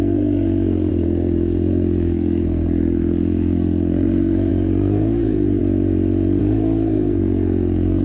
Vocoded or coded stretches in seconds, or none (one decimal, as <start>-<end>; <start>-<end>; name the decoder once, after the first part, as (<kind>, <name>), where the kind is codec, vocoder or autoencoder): 0.0-5.6 (codec, SNAC); 6.4-8.0